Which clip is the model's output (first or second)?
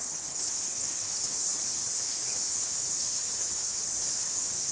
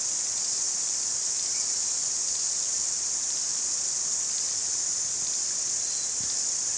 first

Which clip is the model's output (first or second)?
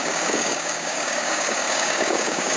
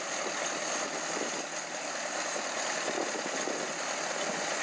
first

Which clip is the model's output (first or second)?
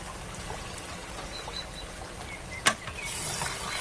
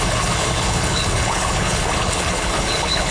second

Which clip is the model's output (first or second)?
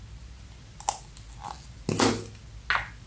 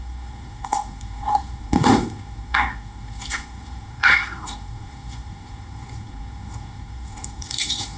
second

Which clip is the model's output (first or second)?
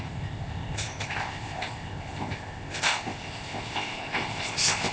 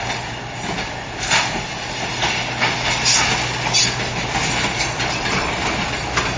first